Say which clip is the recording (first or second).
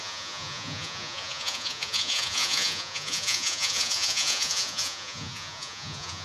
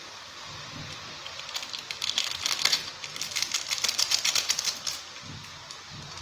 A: second